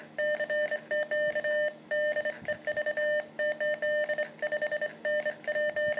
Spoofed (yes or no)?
no